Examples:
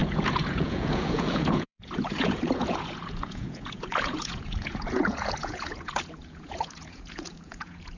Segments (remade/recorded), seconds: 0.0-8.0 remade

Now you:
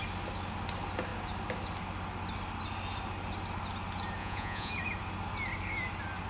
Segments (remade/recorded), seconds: 0.0-4.2 recorded; 4.2-4.7 remade; 4.7-6.3 recorded

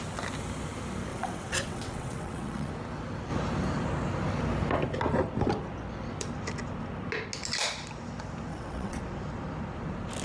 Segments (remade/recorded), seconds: 0.0-1.1 recorded; 1.1-2.7 remade; 2.7-8.5 recorded; 8.5-9.0 remade; 9.0-10.2 recorded

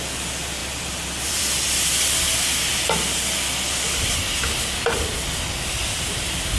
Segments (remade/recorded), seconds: 0.0-0.6 recorded; 0.6-1.6 remade; 1.6-6.6 recorded

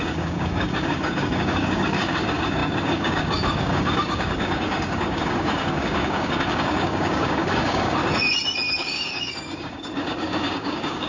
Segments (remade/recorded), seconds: 0.0-8.0 remade; 8.0-8.7 recorded; 8.7-11.1 remade

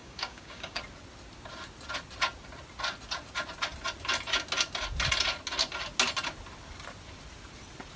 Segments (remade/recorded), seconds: 0.0-0.8 remade; 0.8-8.0 recorded